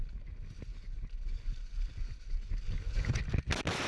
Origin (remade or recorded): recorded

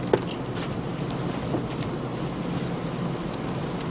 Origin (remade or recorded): recorded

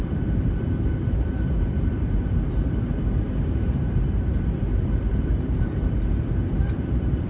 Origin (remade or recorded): remade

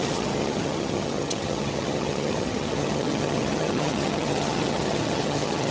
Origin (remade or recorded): remade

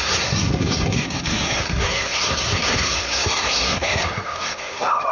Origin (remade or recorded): remade